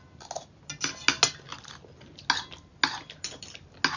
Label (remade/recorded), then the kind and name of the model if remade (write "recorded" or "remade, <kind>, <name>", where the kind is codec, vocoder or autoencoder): recorded